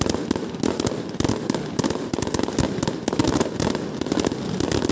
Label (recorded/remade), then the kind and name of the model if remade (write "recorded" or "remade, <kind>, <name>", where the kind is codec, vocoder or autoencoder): recorded